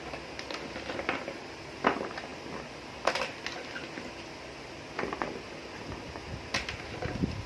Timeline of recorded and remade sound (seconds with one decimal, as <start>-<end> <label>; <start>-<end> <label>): 0.0-7.5 recorded